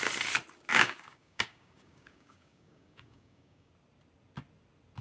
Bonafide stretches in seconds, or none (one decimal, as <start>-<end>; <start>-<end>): 0.0-0.7; 3.7-5.0